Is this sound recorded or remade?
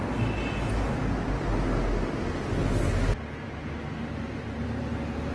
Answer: recorded